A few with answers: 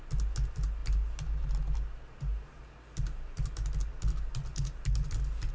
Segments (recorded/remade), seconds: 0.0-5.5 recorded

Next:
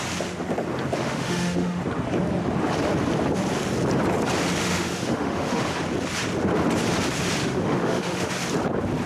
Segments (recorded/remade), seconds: 0.0-1.0 recorded; 1.0-1.8 remade; 1.8-4.6 recorded; 4.6-5.6 remade; 5.6-7.4 recorded; 7.4-8.3 remade; 8.3-9.1 recorded